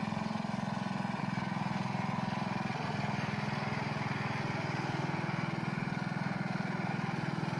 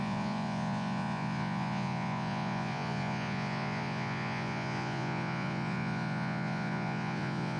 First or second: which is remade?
second